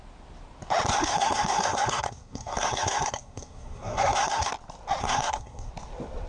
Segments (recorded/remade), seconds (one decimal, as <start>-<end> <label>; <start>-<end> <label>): 0.0-0.9 recorded; 0.9-4.5 remade; 4.5-5.0 recorded; 5.0-5.7 remade; 5.7-6.3 recorded

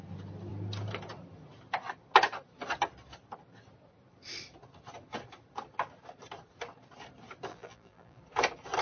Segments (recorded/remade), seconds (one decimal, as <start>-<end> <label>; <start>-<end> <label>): 0.0-7.5 recorded; 7.5-8.2 remade; 8.2-8.8 recorded